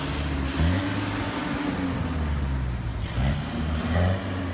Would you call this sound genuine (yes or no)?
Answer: yes